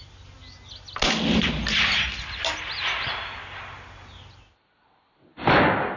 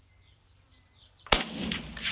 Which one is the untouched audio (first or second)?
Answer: first